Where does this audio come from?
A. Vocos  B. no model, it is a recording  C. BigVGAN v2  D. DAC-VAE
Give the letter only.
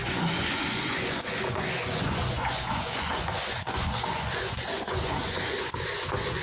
A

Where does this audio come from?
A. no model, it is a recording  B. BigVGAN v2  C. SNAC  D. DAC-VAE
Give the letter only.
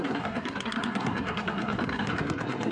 C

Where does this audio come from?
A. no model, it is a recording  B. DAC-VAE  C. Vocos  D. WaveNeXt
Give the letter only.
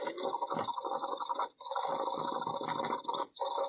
A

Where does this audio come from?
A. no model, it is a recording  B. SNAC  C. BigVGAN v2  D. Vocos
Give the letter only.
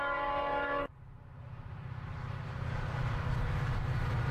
C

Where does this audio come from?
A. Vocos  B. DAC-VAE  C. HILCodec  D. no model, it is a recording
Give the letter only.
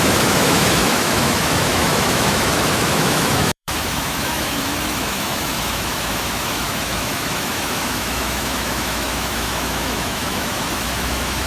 B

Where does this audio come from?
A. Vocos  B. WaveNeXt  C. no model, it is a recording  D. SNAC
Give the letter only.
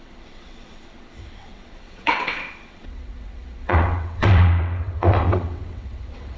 B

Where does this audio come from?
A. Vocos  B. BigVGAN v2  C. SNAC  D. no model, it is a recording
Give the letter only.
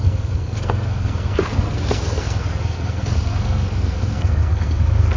C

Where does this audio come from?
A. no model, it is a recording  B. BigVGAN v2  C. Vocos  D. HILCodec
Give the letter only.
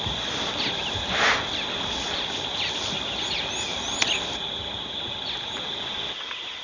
A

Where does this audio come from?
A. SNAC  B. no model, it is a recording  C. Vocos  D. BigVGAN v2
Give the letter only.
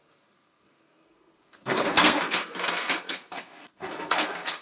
A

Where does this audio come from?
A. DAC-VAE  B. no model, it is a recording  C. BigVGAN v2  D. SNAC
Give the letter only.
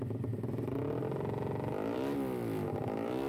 B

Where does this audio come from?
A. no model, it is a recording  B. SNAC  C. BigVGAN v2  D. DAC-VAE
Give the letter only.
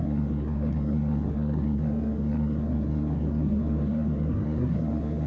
B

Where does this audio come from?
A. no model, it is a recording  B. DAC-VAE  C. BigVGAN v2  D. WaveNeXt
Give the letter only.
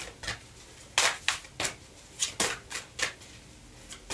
A